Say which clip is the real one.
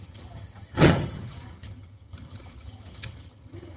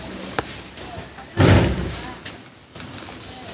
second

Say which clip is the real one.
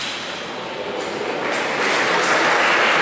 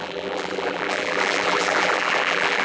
first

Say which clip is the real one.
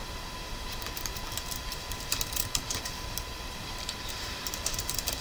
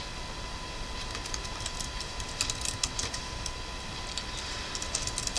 second